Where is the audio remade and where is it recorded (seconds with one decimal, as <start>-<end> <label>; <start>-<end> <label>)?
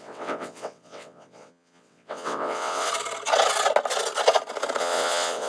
0.0-2.9 remade; 2.9-4.8 recorded; 4.8-5.5 remade